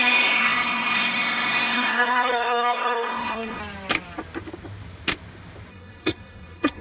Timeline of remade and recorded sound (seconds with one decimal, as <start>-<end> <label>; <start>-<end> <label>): 0.0-3.6 remade; 3.6-5.7 recorded; 5.7-6.8 remade